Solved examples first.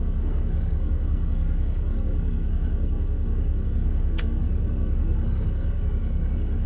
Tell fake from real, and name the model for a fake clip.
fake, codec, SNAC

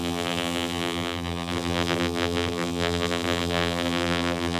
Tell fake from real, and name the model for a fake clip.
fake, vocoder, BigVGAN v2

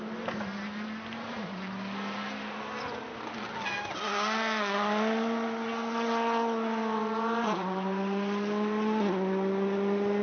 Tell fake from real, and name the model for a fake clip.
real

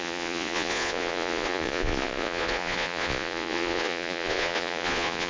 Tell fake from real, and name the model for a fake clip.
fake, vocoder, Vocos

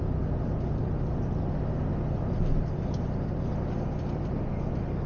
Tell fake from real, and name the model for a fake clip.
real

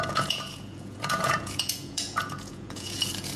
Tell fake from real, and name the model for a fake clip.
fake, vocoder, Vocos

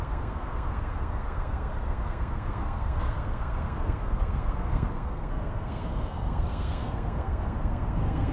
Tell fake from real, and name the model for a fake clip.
fake, codec, SNAC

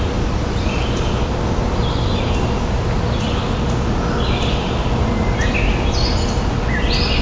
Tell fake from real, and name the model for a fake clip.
real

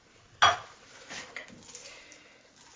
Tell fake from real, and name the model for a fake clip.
real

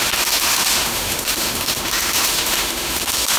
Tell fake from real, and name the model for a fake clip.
fake, autoencoder, DAC-VAE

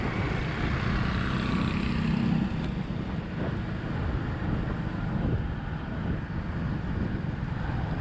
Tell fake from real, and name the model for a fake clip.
real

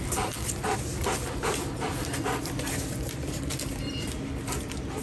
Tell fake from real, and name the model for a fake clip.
real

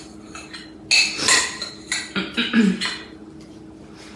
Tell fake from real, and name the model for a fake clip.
real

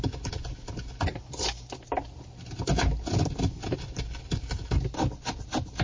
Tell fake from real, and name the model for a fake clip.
real